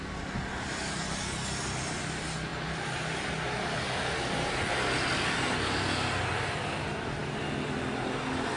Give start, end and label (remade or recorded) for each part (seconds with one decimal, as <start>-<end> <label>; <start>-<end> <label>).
0.0-8.6 recorded